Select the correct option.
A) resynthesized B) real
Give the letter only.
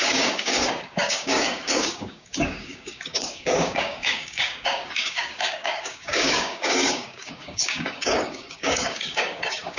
A